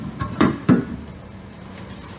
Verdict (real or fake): fake